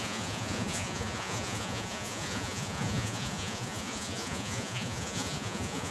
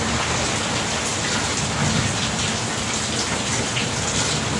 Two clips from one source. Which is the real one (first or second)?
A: second